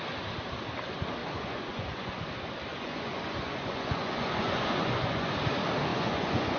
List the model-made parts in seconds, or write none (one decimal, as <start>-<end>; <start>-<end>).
1.2-2.2; 2.7-5.3; 5.9-6.6